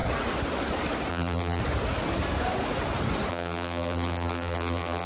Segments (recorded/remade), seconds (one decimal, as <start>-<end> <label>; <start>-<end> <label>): 0.0-1.1 recorded; 1.1-1.6 remade; 1.6-3.3 recorded; 3.3-5.1 remade

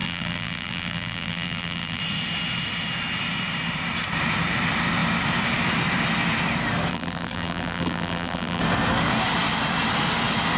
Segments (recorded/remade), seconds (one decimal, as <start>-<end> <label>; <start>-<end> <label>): 0.0-2.0 remade; 2.0-6.9 recorded; 6.9-8.6 remade; 8.6-10.6 recorded